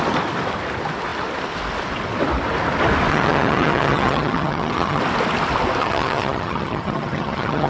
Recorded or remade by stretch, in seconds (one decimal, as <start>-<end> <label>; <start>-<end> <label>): 0.0-3.1 recorded; 3.1-5.0 remade; 5.0-5.8 recorded; 5.8-7.7 remade